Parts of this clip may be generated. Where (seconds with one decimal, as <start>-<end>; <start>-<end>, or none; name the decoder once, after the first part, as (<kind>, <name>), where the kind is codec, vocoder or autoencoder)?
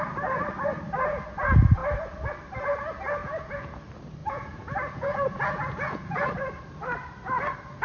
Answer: 3.2-3.8 (vocoder, Vocos); 4.2-6.3